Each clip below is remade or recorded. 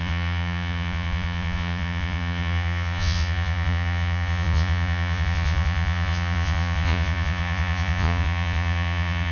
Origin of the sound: remade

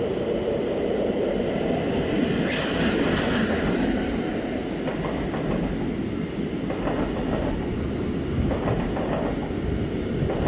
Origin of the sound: recorded